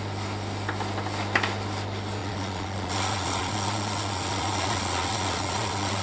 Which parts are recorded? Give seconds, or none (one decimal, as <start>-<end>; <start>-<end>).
0.0-2.2